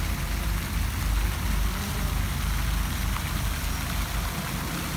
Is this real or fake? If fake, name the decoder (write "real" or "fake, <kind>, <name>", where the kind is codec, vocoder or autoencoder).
real